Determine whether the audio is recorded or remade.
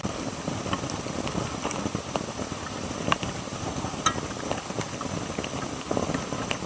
recorded